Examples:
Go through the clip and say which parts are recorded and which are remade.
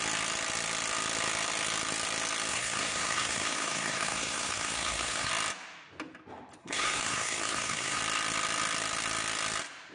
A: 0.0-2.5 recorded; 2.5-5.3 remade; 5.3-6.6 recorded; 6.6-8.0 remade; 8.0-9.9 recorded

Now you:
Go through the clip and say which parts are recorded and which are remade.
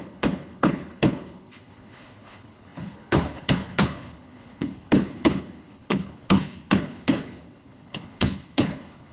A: 0.0-9.1 remade